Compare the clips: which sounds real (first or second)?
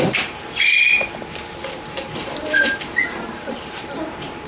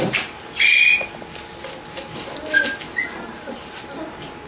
second